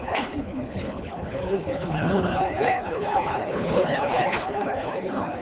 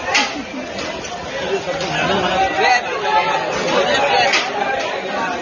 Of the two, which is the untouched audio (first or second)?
second